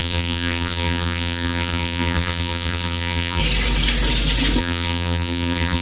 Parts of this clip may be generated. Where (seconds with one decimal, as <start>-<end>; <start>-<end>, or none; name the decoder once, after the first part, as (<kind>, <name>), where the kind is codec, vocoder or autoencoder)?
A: 0.0-3.4 (vocoder, BigVGAN v2); 4.6-5.8